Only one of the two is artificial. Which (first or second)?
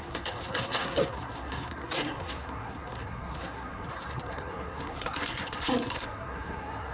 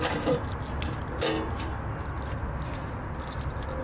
first